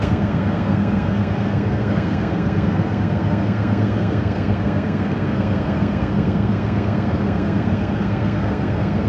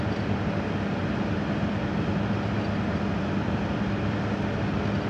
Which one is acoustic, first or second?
second